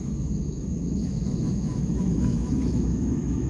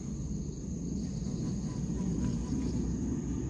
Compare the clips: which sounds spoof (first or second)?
first